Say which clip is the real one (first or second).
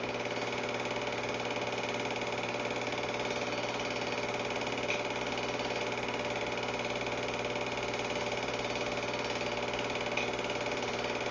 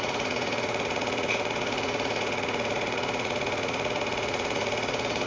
first